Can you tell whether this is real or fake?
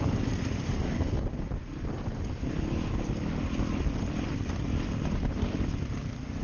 real